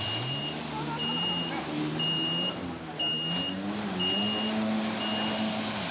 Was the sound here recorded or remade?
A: recorded